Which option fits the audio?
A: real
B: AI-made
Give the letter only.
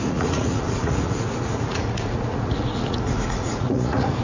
B